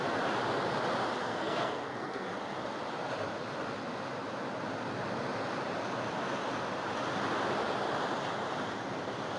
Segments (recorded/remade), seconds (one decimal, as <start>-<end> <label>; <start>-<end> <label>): 0.0-1.2 recorded; 1.2-2.3 remade; 2.3-9.4 recorded